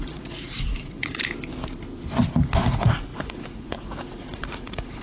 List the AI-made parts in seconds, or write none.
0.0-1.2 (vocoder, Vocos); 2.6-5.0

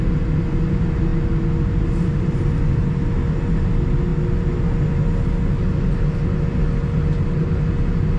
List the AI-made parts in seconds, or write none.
none

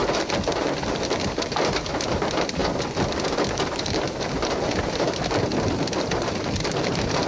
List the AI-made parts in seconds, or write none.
none

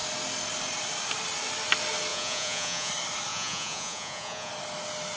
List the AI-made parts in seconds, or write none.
2.1-2.9 (vocoder, Vocos); 3.3-4.5

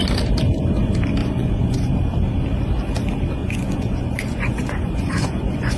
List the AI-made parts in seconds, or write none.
1.2-1.9 (vocoder, Vocos); 3.4-5.8

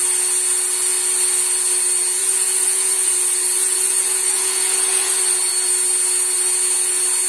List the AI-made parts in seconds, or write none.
2.2-3.1 (vocoder, Vocos); 3.6-5.2

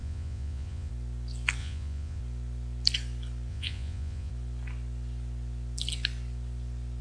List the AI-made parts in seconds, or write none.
0.0-0.9 (vocoder, Vocos); 1.6-2.2; 3.5-4.3

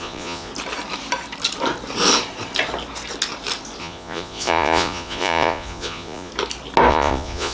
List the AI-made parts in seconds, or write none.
0.0-0.5 (vocoder, Vocos); 3.8-6.3; 6.9-7.5